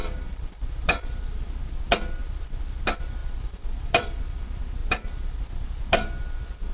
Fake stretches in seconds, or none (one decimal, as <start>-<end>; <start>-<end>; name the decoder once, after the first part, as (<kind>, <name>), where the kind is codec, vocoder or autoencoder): 0.0-1.4 (vocoder, BigVGAN v2); 3.2-4.2; 4.8-5.4